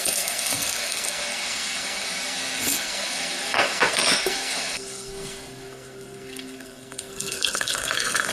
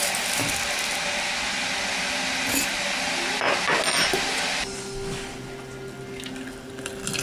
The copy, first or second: first